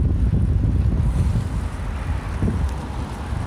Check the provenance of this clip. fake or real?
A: real